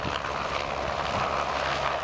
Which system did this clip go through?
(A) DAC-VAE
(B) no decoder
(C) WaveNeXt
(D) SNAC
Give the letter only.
B